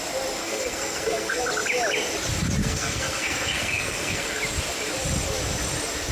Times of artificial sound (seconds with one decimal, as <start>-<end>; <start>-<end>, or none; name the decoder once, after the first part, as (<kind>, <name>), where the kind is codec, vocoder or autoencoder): 0.4-1.4 (codec, SNAC); 2.6-4.4